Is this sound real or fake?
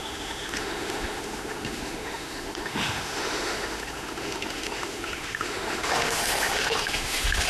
fake